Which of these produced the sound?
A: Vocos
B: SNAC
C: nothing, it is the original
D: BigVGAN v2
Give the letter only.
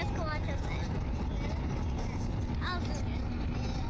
C